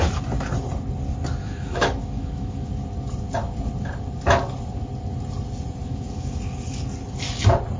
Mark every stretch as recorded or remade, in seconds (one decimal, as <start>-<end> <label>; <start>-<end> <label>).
0.0-1.4 recorded; 1.4-2.7 remade; 2.7-5.8 recorded; 5.8-6.4 remade; 6.4-7.8 recorded